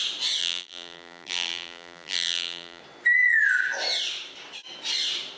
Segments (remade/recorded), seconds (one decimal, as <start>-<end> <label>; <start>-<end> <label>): 0.0-0.4 recorded; 0.4-2.8 remade; 2.8-5.4 recorded